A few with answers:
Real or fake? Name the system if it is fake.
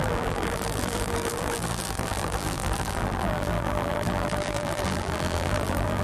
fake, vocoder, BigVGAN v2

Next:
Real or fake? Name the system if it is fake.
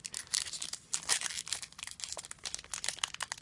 real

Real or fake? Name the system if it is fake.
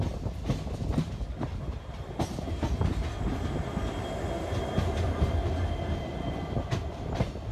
real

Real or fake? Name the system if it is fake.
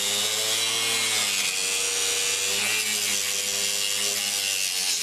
real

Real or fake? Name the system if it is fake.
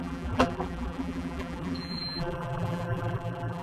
fake, vocoder, BigVGAN v2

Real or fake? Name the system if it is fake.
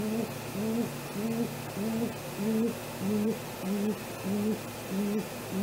real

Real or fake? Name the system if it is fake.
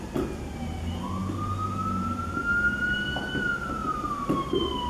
real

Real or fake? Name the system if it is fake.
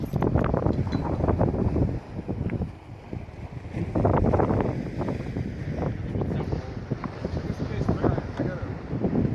real